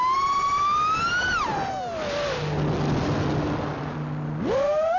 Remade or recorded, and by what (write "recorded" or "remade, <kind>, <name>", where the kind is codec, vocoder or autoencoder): recorded